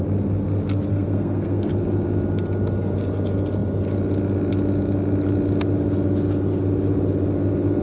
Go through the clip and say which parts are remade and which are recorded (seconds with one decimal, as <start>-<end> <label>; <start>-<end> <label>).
0.0-0.9 recorded; 0.9-1.7 remade; 1.7-7.8 recorded